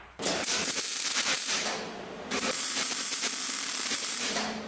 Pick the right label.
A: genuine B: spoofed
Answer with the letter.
B